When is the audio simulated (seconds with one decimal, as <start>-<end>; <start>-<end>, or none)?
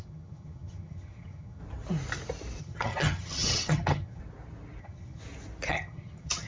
0.0-1.6; 2.6-4.2; 4.8-5.2; 5.7-6.5